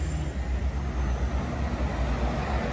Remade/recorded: recorded